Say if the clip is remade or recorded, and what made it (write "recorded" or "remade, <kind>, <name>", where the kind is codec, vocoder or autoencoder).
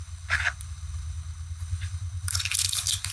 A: remade, codec, HILCodec